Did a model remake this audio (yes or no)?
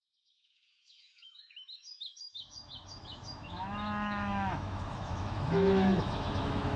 yes